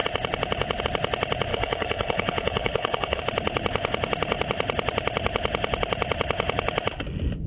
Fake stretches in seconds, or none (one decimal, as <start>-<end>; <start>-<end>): 1.5-3.2